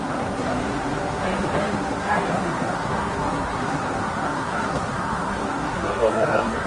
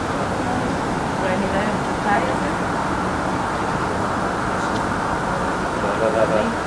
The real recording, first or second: second